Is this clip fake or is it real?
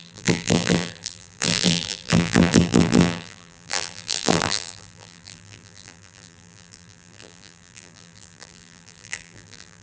fake